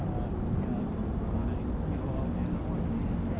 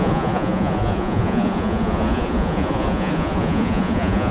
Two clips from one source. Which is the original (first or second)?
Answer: first